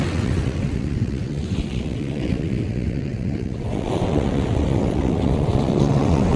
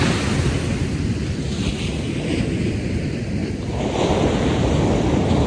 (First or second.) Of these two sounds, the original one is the second